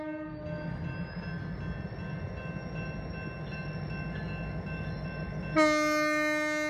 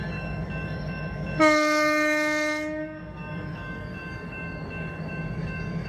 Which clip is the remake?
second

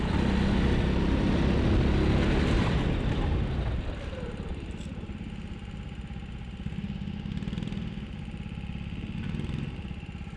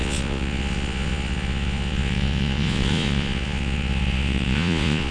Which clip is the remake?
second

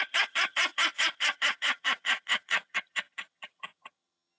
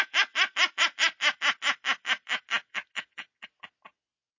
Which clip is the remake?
first